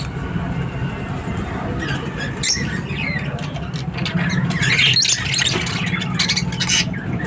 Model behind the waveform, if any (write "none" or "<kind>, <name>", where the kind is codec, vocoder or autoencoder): none